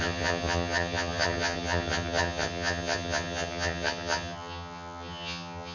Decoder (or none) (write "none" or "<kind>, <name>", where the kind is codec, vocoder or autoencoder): vocoder, HiFi-GAN